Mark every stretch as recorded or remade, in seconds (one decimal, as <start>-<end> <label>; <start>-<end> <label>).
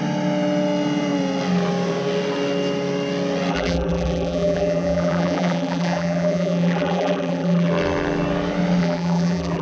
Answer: 0.0-3.5 recorded; 3.5-7.7 remade; 7.7-8.8 recorded; 8.8-9.6 remade